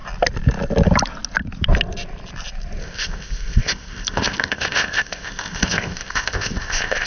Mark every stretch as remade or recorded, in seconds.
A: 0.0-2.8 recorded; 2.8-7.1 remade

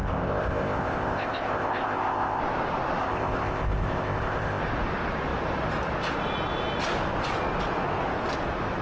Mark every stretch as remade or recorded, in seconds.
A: 0.0-2.4 remade; 2.4-3.0 recorded; 3.0-4.6 remade; 4.6-8.8 recorded

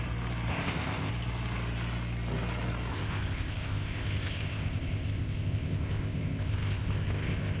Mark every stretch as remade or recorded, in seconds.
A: 0.0-0.5 recorded; 0.5-1.1 remade; 1.1-2.9 recorded; 2.9-7.6 remade

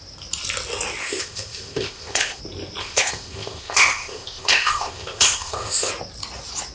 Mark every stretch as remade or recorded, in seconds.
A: 0.0-1.0 recorded; 1.0-2.4 remade; 2.4-2.8 recorded; 2.8-5.9 remade; 5.9-6.7 recorded